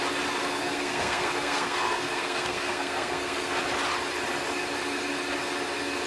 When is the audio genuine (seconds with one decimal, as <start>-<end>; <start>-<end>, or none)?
0.0-0.4; 3.6-6.1